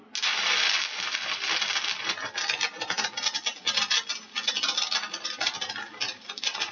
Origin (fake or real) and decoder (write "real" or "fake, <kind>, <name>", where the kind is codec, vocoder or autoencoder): real